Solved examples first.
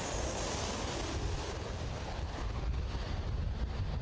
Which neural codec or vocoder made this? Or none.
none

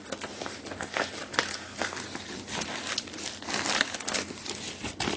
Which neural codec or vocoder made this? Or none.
none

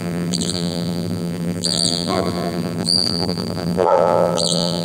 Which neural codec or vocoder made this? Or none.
vocoder, BigVGAN v2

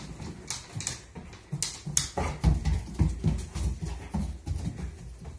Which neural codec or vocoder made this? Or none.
none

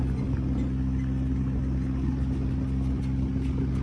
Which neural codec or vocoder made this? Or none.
none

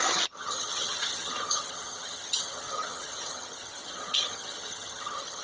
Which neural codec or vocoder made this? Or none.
vocoder, HiFi-GAN